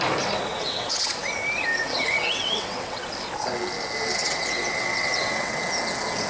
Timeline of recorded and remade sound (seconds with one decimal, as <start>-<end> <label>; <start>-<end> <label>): 0.0-0.5 recorded; 0.5-1.1 remade; 1.1-1.7 recorded; 1.7-3.1 remade; 3.1-4.2 recorded; 4.2-5.6 remade; 5.6-6.3 recorded

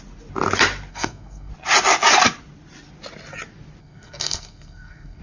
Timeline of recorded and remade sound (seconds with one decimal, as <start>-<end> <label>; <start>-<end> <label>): 0.0-0.9 recorded; 0.9-1.5 remade; 1.5-3.8 recorded; 3.8-5.2 remade